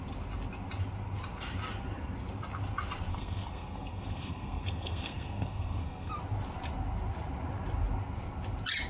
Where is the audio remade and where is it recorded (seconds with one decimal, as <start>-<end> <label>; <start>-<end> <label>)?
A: 0.0-3.1 recorded; 3.1-6.1 remade; 6.1-8.9 recorded